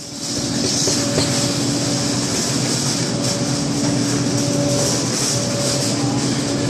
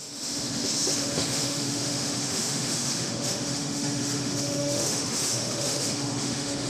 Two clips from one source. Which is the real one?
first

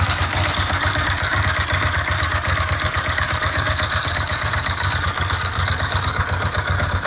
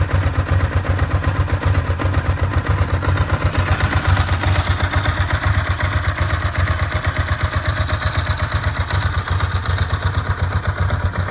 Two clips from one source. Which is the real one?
second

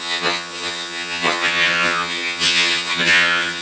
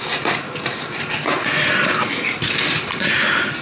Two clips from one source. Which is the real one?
second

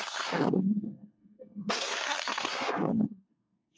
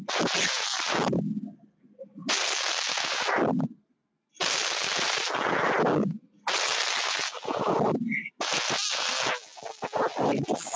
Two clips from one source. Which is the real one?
second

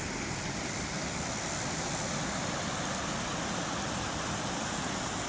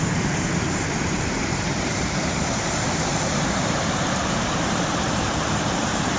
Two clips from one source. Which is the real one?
first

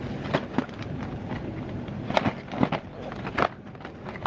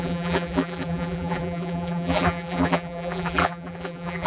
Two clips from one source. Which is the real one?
first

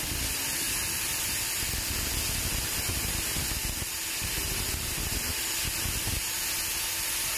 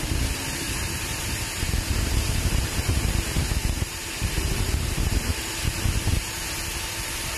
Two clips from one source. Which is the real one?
first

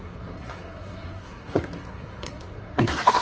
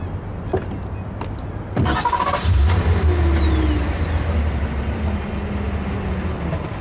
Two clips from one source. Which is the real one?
second